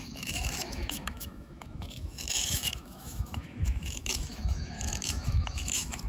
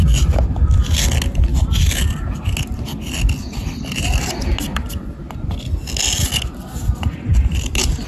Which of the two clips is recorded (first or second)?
second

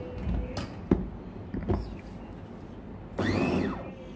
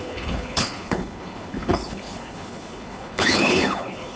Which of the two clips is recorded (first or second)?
first